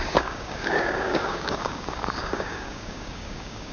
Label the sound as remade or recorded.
remade